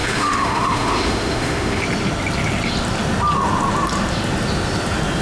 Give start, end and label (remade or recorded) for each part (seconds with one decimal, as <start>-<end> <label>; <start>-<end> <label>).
0.0-1.8 remade; 1.8-5.2 recorded